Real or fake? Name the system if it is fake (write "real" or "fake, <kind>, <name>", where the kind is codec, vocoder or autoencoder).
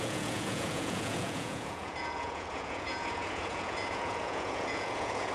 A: fake, vocoder, Vocos